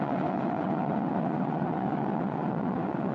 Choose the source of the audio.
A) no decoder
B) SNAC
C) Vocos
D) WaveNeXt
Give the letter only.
D